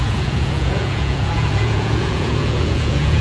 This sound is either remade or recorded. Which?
remade